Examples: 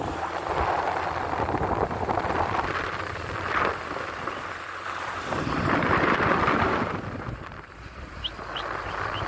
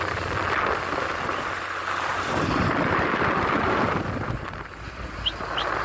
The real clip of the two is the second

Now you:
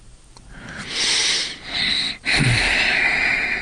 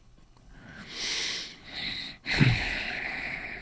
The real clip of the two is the first